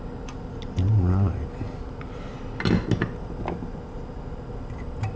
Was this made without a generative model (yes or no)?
yes